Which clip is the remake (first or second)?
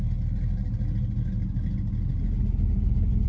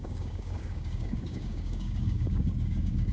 second